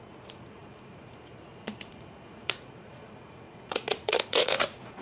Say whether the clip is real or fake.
fake